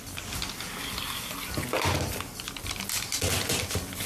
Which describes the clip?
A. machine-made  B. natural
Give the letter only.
B